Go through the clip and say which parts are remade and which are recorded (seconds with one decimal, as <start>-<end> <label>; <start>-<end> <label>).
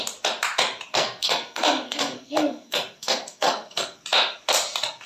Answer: 0.0-0.9 recorded; 0.9-4.0 remade; 4.0-5.1 recorded